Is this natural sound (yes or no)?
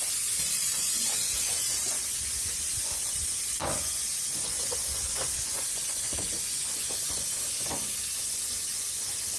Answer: no